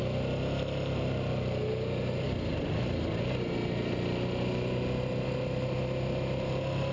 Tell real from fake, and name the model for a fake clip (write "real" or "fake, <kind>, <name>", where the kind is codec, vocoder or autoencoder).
real